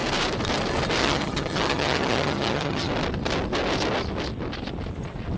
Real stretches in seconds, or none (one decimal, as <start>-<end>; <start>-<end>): 0.0-1.0; 2.9-5.4